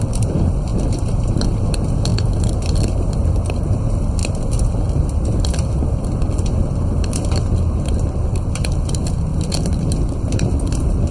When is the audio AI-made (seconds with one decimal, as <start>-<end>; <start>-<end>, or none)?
9.3-11.1